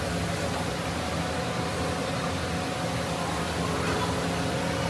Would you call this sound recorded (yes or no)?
yes